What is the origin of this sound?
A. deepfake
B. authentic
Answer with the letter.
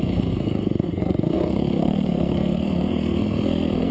A